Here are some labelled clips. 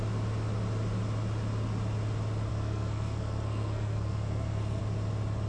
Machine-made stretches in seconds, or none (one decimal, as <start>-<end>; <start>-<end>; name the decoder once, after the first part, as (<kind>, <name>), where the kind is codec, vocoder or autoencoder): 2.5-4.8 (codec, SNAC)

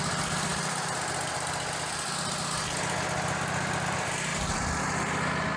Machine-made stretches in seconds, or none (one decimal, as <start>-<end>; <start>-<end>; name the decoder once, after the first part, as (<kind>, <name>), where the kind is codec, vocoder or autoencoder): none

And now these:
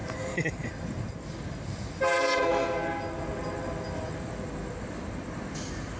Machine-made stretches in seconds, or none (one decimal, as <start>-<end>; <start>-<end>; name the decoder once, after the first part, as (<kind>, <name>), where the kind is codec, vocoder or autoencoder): none